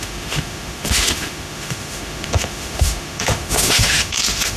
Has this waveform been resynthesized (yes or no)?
yes